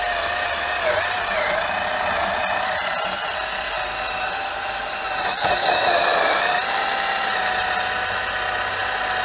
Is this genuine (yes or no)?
yes